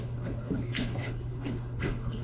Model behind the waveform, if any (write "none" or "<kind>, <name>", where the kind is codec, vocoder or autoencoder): codec, HILCodec